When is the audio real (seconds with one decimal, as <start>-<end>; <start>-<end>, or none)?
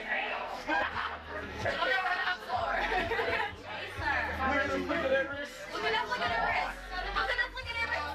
2.6-4.9; 5.6-6.7